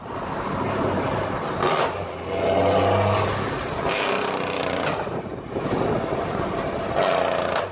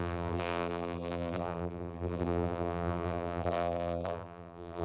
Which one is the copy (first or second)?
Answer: second